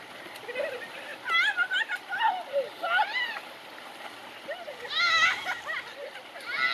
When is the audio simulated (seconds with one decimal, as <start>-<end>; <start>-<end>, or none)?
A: none